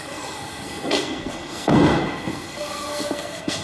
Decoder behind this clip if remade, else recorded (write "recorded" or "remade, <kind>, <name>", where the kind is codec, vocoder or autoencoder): remade, codec, SNAC